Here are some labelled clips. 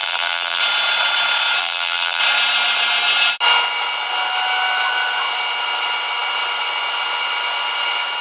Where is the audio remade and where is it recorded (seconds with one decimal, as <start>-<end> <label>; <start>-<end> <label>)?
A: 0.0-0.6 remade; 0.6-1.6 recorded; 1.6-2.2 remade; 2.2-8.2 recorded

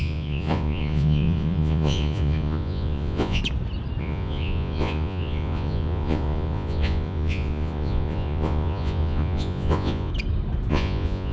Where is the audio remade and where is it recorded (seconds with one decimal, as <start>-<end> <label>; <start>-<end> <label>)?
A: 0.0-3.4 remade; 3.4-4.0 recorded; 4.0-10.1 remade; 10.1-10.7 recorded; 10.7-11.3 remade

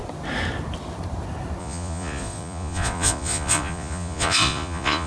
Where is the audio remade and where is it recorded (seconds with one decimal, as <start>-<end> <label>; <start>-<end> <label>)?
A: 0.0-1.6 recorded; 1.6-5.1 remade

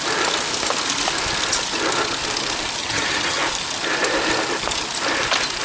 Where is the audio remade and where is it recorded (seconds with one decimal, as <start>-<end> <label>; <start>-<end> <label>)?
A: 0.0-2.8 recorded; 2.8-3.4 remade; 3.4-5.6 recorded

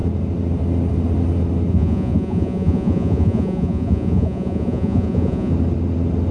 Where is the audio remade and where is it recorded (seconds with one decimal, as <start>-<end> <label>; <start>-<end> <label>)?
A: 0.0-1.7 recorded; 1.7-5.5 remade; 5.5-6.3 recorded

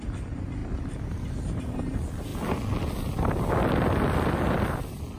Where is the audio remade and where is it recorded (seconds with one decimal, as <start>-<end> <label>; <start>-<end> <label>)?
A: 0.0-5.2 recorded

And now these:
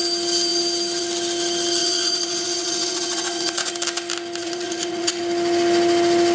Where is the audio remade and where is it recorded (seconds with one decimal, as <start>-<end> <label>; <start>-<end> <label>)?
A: 0.0-1.8 recorded; 1.8-3.7 remade; 3.7-4.4 recorded; 4.4-5.2 remade; 5.2-6.3 recorded

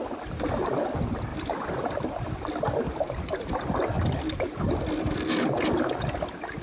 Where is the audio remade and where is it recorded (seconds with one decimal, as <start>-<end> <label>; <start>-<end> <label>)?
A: 0.0-6.6 recorded